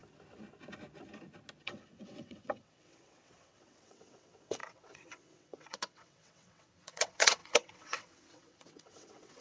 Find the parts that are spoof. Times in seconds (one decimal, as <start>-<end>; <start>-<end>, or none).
1.6-9.4